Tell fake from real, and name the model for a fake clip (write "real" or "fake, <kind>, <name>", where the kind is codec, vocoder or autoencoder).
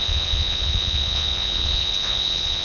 fake, vocoder, Vocos